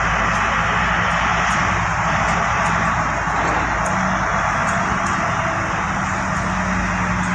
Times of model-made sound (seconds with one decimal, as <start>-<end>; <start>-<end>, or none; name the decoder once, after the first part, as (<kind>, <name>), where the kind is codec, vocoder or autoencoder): 1.3-2.6 (vocoder, BigVGAN v2); 4.6-5.1